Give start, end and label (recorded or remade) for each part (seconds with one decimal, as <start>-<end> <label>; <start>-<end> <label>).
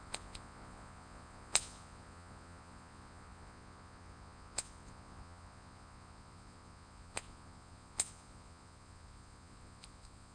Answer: 0.0-10.3 remade